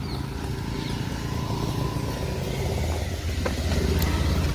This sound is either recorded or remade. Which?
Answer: recorded